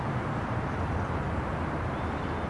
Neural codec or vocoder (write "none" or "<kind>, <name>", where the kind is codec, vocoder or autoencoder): none